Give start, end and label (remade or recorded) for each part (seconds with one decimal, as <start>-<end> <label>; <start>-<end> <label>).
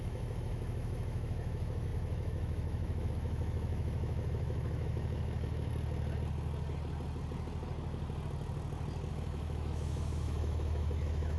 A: 0.0-5.7 remade; 5.7-9.1 recorded; 9.1-11.4 remade